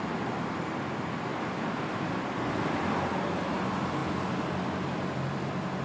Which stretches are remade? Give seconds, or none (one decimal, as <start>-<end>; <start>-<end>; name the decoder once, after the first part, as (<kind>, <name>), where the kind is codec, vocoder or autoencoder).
1.3-2.1 (vocoder, BigVGAN v2); 4.0-5.8